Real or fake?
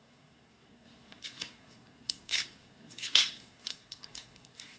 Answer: fake